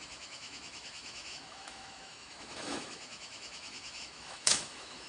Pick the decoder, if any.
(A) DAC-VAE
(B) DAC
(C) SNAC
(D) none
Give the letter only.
A